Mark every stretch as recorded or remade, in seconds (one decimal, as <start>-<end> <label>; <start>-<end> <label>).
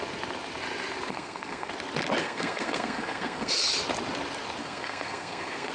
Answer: 0.0-1.1 recorded; 1.1-1.7 remade; 1.7-2.2 recorded; 2.2-3.5 remade; 3.5-4.6 recorded; 4.6-5.7 remade